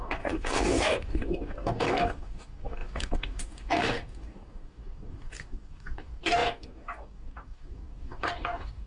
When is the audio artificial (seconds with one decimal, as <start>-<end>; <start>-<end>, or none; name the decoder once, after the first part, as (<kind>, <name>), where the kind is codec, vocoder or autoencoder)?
0.0-8.9 (codec, DAC)